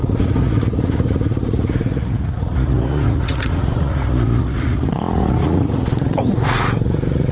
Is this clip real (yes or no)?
no